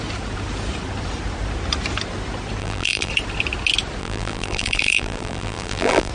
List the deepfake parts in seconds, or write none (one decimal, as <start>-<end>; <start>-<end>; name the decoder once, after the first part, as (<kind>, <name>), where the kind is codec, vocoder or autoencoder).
2.6-3.1 (vocoder, BigVGAN v2); 4.0-6.1